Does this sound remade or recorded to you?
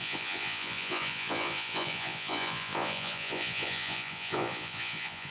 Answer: remade